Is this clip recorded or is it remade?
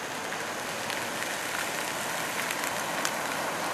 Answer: recorded